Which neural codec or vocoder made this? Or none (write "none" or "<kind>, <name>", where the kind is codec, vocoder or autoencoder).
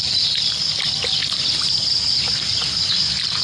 none